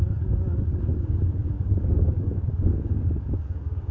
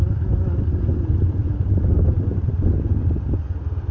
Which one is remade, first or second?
first